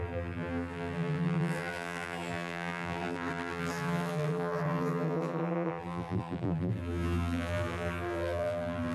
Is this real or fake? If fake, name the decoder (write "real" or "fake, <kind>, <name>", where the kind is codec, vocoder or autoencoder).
fake, vocoder, BigVGAN v2